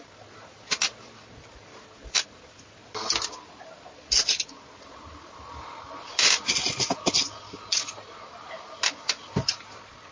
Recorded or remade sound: recorded